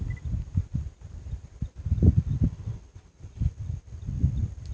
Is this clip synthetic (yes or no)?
no